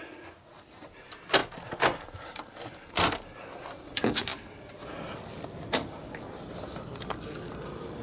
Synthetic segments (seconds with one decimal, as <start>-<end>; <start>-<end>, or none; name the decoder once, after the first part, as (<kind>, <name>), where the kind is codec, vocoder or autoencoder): none